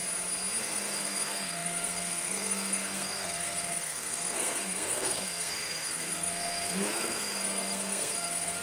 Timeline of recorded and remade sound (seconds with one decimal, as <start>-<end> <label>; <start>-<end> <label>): 0.0-0.6 recorded; 0.6-8.6 remade